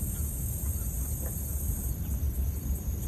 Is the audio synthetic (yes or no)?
no